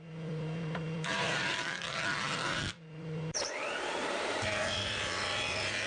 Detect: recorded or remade remade